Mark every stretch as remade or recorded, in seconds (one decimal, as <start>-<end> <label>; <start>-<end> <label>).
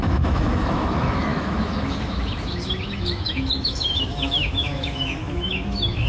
0.0-6.1 remade